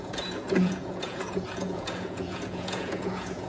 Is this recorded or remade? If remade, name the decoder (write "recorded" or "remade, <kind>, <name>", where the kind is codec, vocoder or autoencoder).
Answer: remade, vocoder, Vocos